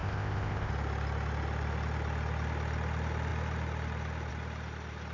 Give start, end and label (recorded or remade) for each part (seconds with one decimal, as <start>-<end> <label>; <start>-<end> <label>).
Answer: 0.0-0.7 remade; 0.7-5.1 recorded